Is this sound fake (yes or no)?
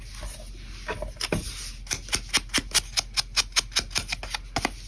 no